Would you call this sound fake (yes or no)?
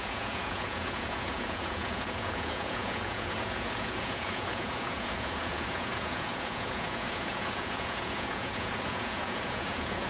yes